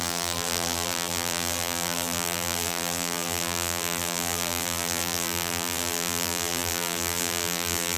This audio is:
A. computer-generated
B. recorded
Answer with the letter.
A